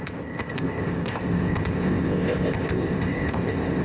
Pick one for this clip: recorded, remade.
remade